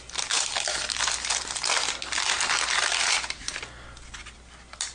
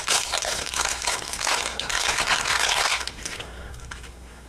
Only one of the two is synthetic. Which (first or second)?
second